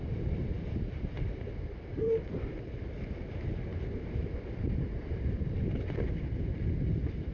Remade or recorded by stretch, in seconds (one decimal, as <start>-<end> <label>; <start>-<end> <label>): 0.0-3.7 recorded; 3.7-6.7 remade; 6.7-7.3 recorded